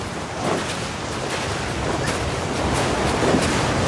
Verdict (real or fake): real